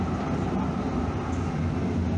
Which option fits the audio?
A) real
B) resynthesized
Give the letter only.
A